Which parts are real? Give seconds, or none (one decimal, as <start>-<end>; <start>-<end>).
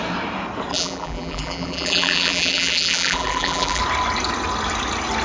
0.0-0.7; 3.8-5.2